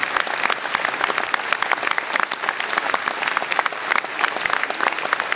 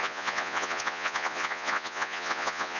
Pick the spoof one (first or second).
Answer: second